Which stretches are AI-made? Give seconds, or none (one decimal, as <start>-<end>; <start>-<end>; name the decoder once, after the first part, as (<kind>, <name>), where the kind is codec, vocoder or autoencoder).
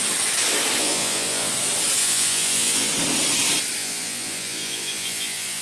0.8-1.5 (vocoder, Vocos); 2.0-2.9; 3.8-5.6